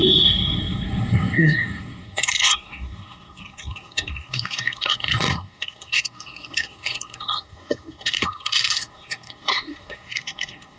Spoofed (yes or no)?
yes